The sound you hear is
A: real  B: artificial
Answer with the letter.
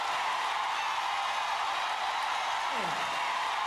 A